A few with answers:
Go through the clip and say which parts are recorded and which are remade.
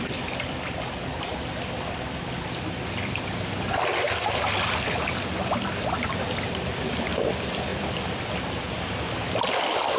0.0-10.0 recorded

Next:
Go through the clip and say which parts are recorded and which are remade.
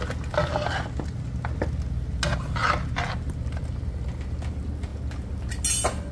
0.0-6.1 recorded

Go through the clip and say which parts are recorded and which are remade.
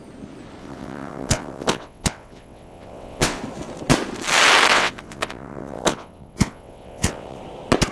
0.0-0.6 recorded; 0.6-3.4 remade; 3.4-4.7 recorded; 4.7-7.4 remade; 7.4-7.9 recorded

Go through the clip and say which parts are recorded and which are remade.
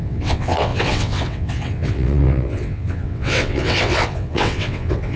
0.0-5.2 remade